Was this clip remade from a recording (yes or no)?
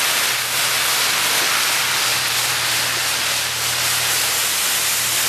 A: no